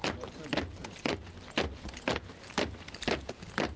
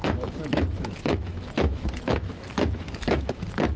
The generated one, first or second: second